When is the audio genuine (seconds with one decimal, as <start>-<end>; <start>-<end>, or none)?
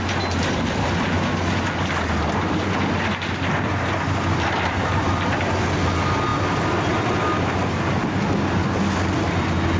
0.0-9.8